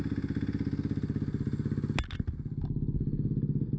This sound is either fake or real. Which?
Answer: real